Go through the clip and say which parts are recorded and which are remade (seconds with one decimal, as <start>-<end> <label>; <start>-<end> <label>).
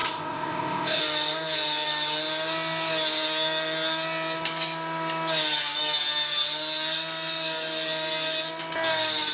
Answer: 0.0-1.0 remade; 1.0-9.3 recorded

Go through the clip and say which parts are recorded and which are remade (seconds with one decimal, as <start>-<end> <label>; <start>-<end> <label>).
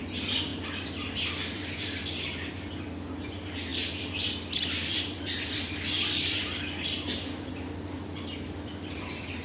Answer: 0.0-9.4 remade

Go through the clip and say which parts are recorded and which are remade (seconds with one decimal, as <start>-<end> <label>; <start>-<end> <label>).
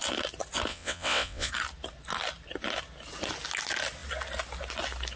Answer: 0.0-0.7 recorded; 0.7-1.5 remade; 1.5-5.2 recorded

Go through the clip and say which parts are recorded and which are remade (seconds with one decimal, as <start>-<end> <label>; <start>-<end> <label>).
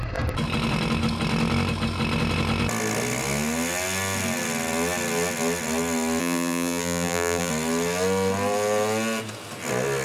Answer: 0.0-6.2 recorded; 6.2-7.5 remade; 7.5-10.0 recorded